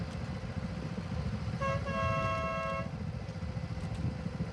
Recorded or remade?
recorded